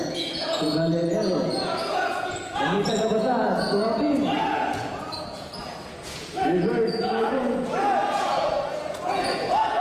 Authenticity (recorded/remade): remade